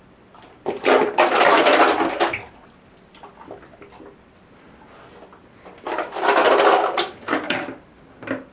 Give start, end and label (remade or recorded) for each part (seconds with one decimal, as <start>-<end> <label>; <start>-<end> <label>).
0.0-8.5 recorded